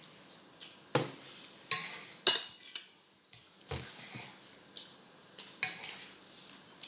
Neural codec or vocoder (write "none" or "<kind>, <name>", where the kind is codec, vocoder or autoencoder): none